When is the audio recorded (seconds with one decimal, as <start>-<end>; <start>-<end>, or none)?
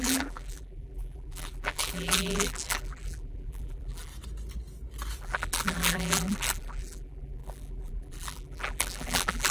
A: 4.1-5.2